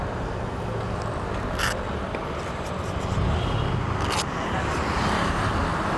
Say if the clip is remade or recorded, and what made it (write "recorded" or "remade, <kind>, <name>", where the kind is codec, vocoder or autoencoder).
recorded